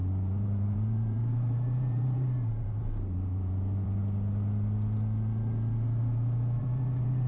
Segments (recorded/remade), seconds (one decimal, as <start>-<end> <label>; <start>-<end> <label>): 0.0-4.0 remade; 4.0-6.6 recorded; 6.6-7.3 remade